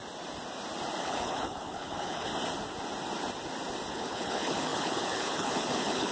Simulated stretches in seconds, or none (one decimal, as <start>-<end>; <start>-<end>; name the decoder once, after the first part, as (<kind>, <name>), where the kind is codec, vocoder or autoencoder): 1.0-2.3 (codec, HILCodec); 3.9-6.1